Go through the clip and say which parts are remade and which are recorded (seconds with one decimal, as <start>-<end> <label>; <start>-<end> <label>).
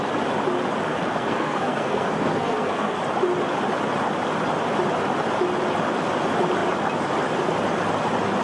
0.0-0.9 recorded; 0.9-3.0 remade; 3.0-8.4 recorded